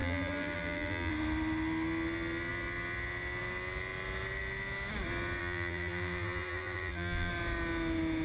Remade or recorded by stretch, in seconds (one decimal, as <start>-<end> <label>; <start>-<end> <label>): 0.0-1.1 remade; 1.1-5.4 recorded; 5.4-7.3 remade; 7.3-8.2 recorded